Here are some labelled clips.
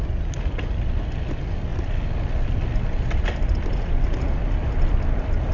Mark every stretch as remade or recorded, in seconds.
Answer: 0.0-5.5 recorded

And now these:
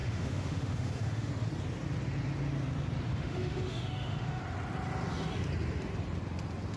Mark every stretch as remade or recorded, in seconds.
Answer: 0.0-1.3 remade; 1.3-3.1 recorded; 3.1-4.4 remade; 4.4-6.8 recorded

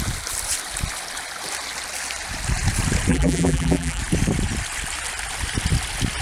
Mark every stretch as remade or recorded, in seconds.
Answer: 0.0-3.1 recorded; 3.1-4.0 remade; 4.0-6.2 recorded

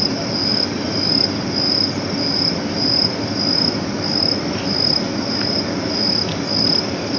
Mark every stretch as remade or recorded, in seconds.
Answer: 0.0-7.2 recorded

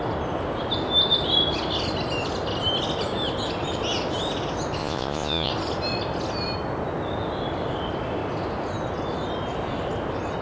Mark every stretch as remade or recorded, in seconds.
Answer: 0.0-4.8 recorded; 4.8-5.5 remade; 5.5-10.4 recorded

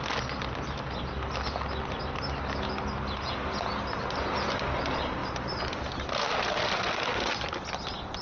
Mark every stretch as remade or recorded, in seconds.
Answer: 0.0-8.2 recorded

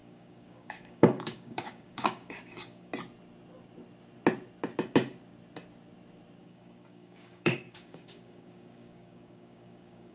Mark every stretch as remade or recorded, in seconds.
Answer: 0.0-2.9 remade; 2.9-6.4 recorded; 6.4-10.1 remade